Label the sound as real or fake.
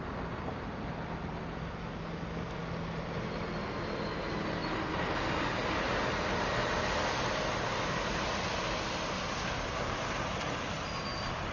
real